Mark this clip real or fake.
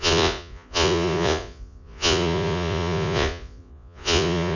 fake